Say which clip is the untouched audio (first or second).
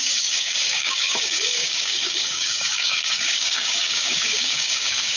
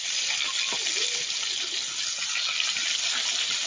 second